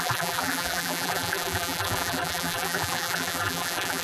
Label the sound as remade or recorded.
remade